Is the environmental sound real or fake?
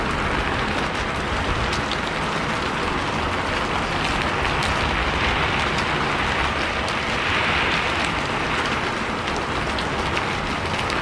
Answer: real